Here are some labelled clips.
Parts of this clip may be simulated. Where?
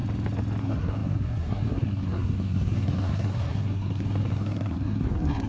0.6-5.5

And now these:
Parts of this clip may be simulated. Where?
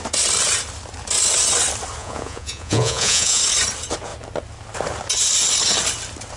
2.0-3.4